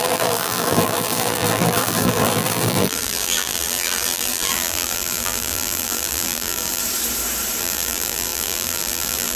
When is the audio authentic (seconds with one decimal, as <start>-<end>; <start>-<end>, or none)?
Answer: 6.8-7.6